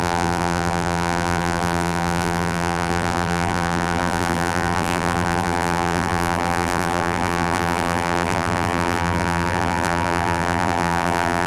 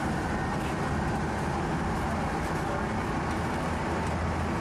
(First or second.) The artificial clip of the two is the first